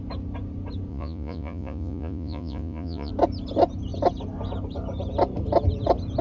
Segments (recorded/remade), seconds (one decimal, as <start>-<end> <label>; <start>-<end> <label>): 0.0-0.9 recorded; 0.9-3.1 remade; 3.1-6.2 recorded